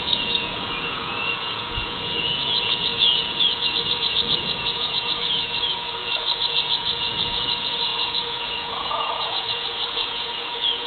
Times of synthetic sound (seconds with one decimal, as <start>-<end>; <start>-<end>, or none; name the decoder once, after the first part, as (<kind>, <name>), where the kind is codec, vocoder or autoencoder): 0.0-10.9 (vocoder, Vocos)